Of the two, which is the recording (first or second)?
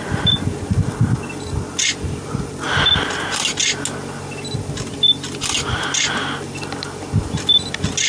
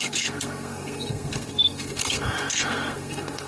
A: first